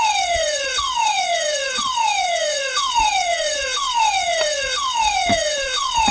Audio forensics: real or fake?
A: fake